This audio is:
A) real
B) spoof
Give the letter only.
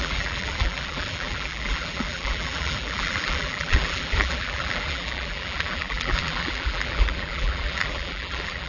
B